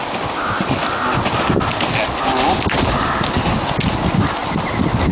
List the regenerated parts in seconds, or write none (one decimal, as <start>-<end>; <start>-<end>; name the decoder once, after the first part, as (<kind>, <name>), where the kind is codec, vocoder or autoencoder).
none